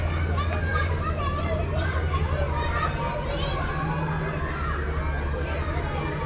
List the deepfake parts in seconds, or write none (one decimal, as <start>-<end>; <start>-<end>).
0.7-3.7